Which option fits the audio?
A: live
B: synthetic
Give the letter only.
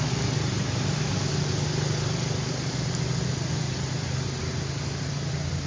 A